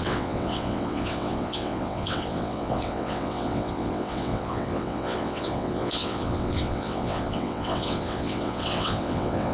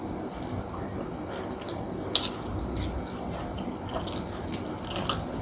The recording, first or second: second